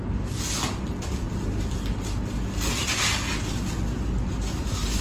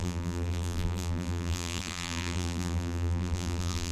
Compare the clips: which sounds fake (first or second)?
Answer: second